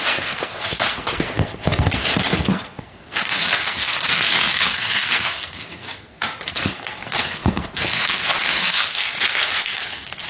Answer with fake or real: fake